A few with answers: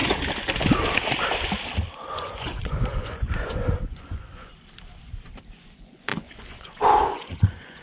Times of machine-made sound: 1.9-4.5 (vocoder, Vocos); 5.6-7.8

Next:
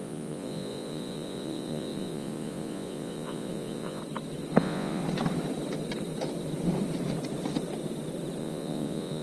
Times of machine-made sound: 0.0-4.0 (vocoder, Vocos); 4.6-5.0; 8.4-9.2

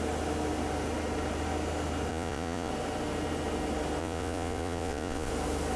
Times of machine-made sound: 2.1-2.7 (vocoder, Vocos); 4.0-5.3

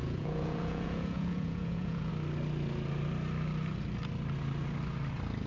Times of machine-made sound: 0.0-2.1 (vocoder, Vocos)

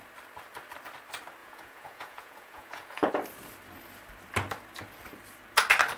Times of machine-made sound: 1.4-3.1 (vocoder, Vocos)